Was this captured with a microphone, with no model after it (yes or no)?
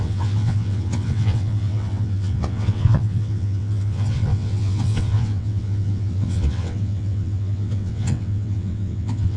no